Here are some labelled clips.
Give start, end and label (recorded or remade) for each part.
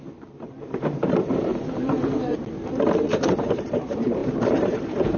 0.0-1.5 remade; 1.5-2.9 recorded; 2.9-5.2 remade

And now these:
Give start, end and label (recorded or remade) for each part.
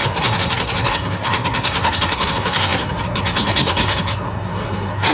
0.0-5.1 remade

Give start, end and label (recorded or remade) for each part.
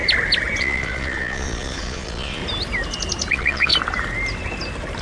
0.0-0.6 recorded; 0.6-2.4 remade; 2.4-3.3 recorded; 3.3-3.7 remade; 3.7-5.0 recorded